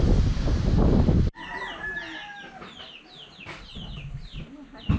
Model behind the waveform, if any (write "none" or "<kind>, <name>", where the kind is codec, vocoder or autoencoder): none